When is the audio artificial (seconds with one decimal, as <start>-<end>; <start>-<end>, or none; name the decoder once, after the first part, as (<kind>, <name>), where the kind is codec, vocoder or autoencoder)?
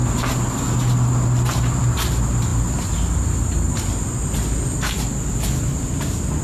none